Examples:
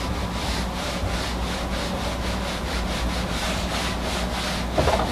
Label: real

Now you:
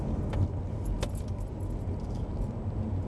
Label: real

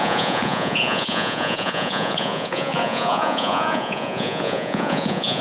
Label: fake